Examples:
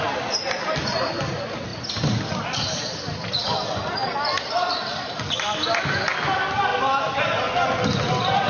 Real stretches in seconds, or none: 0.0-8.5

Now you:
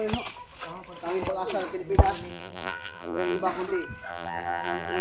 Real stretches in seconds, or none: 0.0-2.3; 3.4-4.1

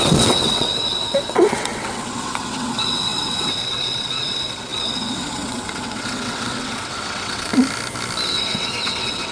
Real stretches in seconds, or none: 7.5-8.3

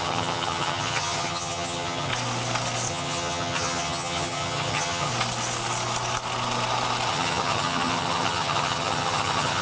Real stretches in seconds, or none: 2.1-2.9; 5.1-7.1

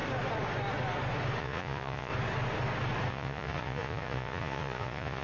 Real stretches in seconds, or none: 0.0-1.4; 2.1-3.1

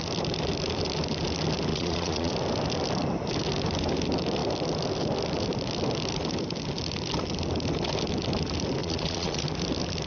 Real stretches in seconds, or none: 0.0-1.7; 2.3-8.8; 9.4-10.1

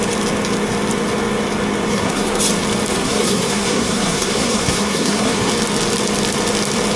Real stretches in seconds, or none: 0.0-1.9; 2.4-2.9; 5.5-7.0

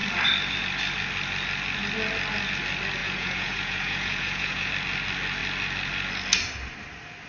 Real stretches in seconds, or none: 0.0-3.0; 4.7-7.3